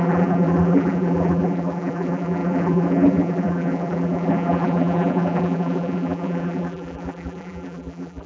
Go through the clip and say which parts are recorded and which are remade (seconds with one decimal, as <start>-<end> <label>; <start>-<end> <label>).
0.0-8.3 remade